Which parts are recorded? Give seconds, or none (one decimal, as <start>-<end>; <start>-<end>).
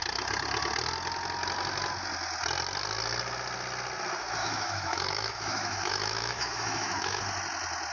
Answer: 0.0-4.4; 7.2-7.9